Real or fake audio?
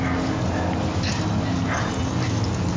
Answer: real